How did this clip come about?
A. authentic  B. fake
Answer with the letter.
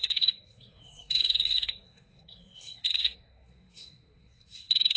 B